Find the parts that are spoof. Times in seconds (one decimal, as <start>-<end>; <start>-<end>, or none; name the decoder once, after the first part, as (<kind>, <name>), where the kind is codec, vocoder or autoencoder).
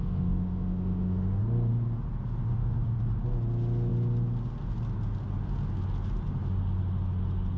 0.0-1.4 (autoencoder, DAC-VAE); 2.4-3.0